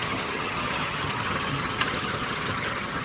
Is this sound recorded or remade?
remade